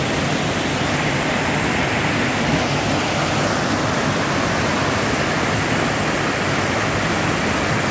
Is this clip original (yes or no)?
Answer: yes